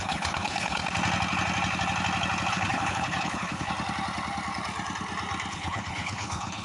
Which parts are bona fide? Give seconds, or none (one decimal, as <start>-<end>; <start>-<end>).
0.8-2.5; 3.7-5.5